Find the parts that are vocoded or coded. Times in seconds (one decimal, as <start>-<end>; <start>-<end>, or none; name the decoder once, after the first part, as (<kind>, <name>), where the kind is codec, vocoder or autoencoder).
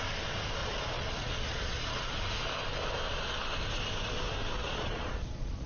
0.6-2.1 (vocoder, Vocos); 4.6-5.7